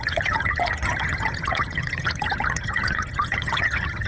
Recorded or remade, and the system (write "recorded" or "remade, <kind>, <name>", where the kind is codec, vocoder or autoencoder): remade, vocoder, HiFi-GAN